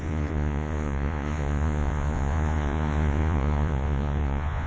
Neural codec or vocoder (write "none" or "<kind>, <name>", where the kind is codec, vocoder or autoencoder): vocoder, Vocos